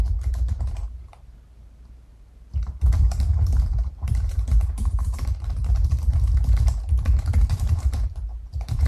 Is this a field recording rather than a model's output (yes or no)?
no